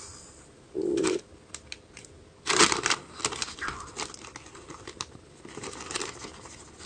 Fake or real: real